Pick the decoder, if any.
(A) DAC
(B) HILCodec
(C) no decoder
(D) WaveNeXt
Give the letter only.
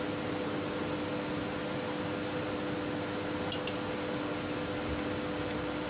C